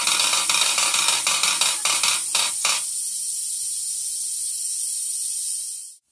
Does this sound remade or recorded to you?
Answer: recorded